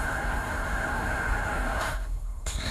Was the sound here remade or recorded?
remade